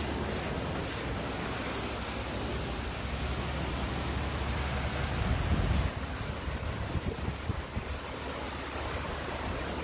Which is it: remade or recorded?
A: recorded